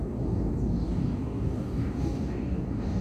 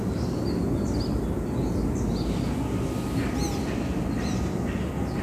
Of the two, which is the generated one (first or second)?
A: first